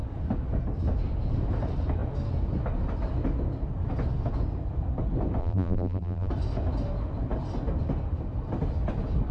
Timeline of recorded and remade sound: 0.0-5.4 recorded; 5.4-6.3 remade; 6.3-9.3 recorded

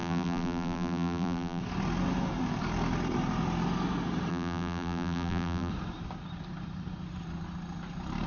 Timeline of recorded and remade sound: 0.0-1.6 remade; 1.6-4.3 recorded; 4.3-5.7 remade; 5.7-8.3 recorded

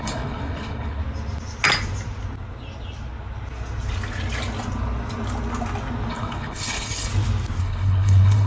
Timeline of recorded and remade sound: 0.0-1.0 remade; 1.0-6.1 recorded; 6.1-7.1 remade; 7.1-7.6 recorded; 7.6-8.5 remade

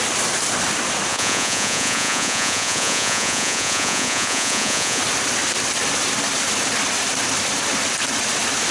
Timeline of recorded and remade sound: 0.0-1.1 recorded; 1.1-5.0 remade; 5.0-8.7 recorded

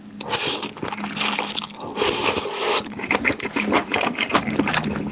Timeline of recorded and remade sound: 0.0-2.2 recorded; 2.2-4.6 remade; 4.6-5.1 recorded

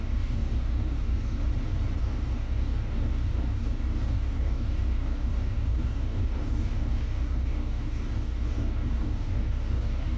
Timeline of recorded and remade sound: 0.0-1.4 remade; 1.4-2.0 recorded; 2.0-10.2 remade